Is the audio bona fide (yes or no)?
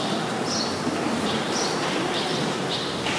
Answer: yes